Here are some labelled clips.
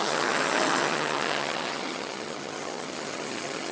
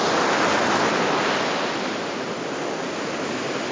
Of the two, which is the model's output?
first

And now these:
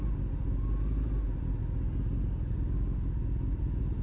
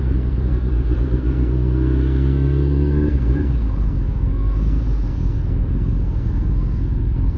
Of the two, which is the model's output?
second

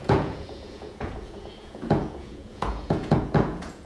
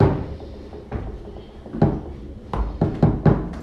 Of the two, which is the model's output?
first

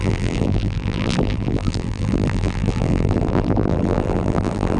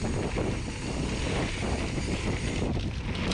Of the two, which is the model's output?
first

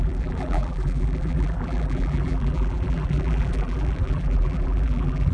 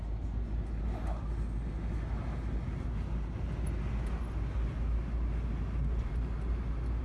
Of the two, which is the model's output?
first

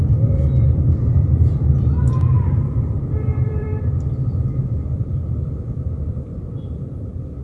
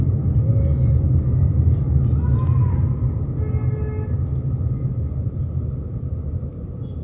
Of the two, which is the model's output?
first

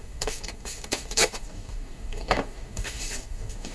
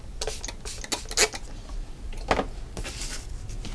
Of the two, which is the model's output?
first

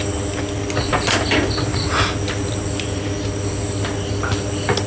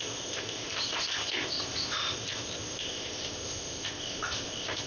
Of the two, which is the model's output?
second